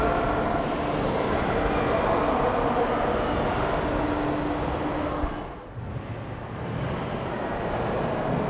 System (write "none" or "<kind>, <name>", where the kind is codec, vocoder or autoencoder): none